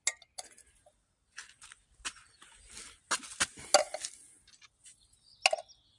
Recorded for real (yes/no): yes